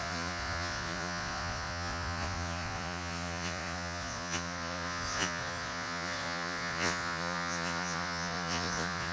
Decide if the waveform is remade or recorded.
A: remade